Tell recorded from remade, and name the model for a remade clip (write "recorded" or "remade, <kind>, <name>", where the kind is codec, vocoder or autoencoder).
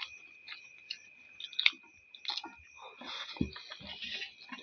recorded